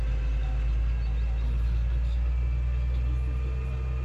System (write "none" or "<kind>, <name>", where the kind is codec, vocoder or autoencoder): none